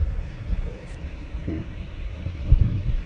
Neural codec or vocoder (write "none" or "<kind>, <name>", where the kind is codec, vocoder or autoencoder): codec, SNAC